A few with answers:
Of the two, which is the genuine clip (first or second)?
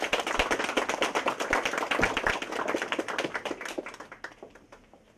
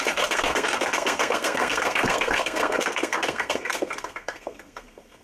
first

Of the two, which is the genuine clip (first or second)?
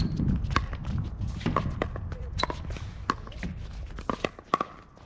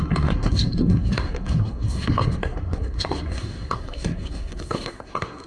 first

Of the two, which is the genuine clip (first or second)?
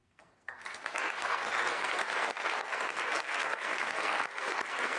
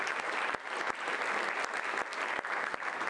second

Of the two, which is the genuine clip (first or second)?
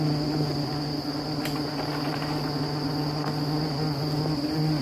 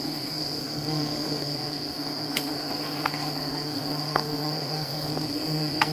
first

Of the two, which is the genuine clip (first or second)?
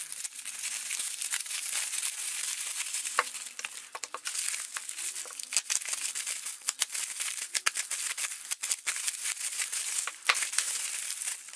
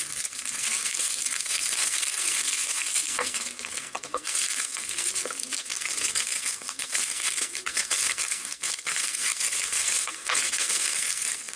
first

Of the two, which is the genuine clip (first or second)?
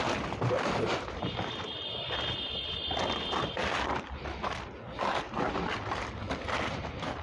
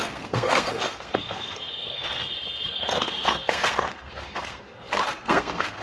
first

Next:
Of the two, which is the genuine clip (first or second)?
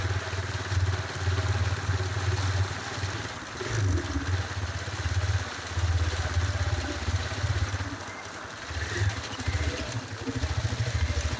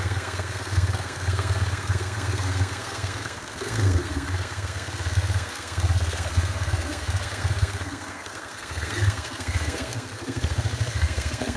first